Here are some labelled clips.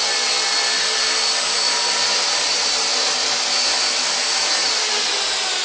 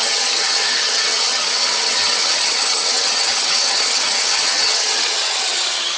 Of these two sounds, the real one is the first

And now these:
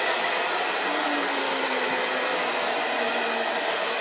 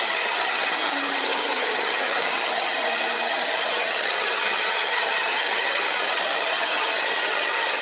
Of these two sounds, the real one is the first